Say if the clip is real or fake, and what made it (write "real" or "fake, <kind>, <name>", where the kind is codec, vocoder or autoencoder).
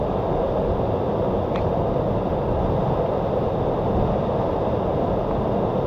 real